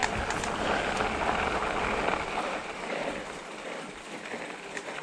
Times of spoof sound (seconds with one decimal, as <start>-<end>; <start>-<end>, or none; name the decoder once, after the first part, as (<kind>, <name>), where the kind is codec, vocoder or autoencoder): 0.6-1.6 (vocoder, BigVGAN v2); 4.6-5.0